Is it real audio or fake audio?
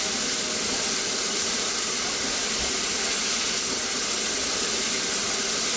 real